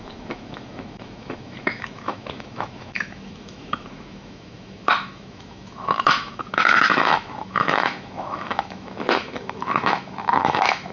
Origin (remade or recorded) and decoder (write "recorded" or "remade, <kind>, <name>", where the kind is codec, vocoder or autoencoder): remade, autoencoder, DAC-VAE